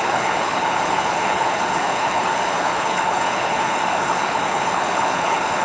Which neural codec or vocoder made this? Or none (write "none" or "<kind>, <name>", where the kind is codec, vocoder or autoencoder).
codec, HILCodec